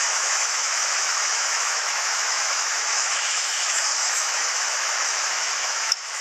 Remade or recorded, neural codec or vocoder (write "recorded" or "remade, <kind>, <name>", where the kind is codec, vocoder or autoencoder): remade, autoencoder, DAC-VAE